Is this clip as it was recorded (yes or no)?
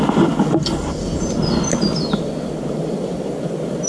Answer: yes